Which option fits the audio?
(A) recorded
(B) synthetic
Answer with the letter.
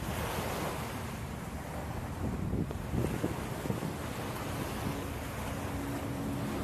A